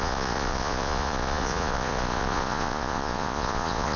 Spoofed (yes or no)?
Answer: yes